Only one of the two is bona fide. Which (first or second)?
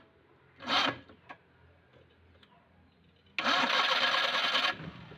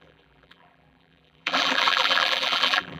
first